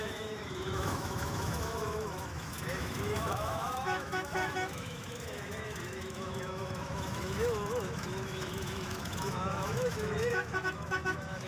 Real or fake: fake